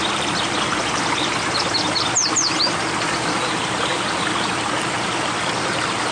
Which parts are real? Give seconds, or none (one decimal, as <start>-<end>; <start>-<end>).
0.0-6.1

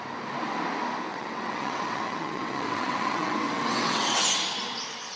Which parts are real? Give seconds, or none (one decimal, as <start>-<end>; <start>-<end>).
0.0-1.1; 4.2-5.2